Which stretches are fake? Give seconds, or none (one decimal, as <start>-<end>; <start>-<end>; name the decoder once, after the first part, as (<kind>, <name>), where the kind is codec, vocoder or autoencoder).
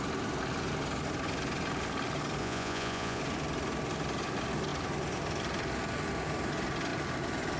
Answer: 2.4-3.2 (vocoder, Vocos)